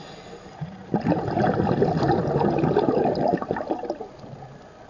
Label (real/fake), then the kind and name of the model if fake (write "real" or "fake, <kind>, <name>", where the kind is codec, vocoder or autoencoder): fake, vocoder, BigVGAN v2